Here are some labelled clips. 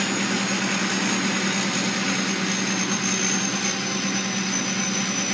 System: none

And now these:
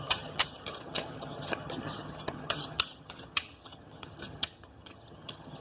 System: vocoder, HiFi-GAN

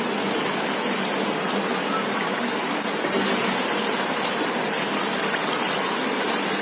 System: none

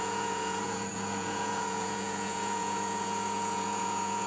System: vocoder, Vocos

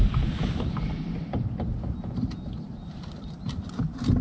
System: none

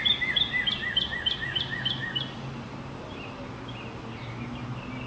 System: none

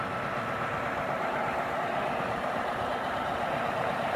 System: none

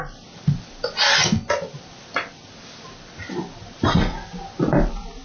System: none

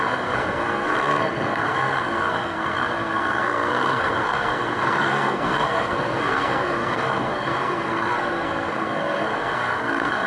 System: codec, SNAC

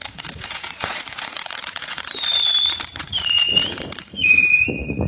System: vocoder, Vocos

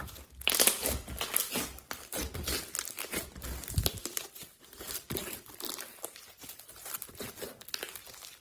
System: none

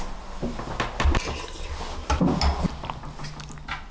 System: none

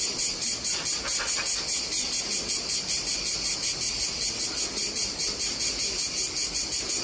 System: none